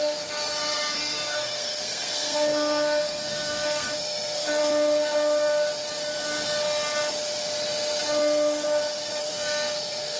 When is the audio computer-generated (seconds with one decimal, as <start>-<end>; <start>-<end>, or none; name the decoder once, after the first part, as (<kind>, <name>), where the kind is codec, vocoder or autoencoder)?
0.0-4.6 (codec, SNAC); 9.2-10.2